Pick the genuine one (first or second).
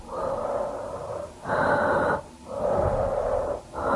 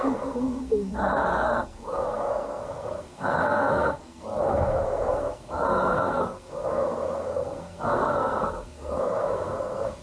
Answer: first